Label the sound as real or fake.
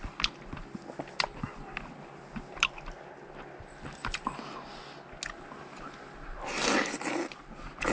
real